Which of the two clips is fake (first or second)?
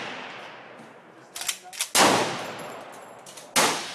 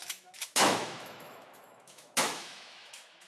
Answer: second